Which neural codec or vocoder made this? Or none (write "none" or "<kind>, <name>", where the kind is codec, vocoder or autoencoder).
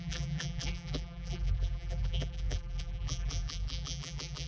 vocoder, BigVGAN v2